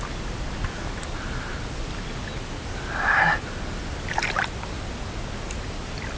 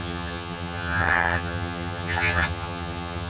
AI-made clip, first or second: second